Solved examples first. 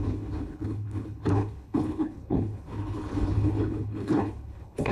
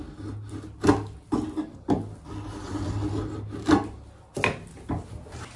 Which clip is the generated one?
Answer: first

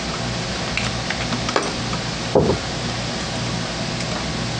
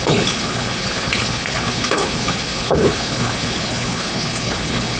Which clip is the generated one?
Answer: second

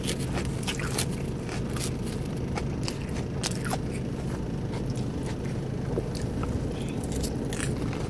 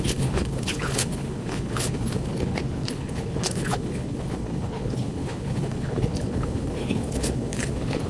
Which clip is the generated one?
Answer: second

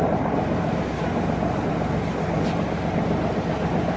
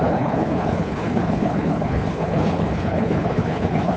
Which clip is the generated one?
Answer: second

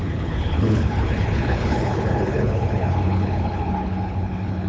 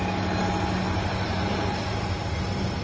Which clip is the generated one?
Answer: first